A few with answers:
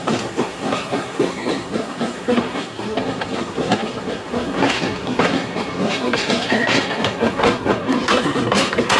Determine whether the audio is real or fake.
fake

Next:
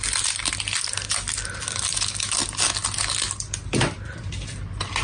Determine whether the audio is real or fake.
real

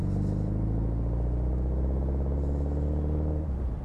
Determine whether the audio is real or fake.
real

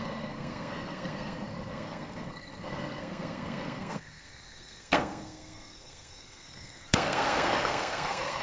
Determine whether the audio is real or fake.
fake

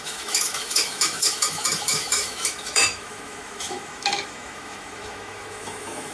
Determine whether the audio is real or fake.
fake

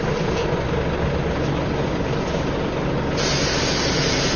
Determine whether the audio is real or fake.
real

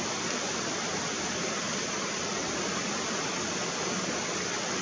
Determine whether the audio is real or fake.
real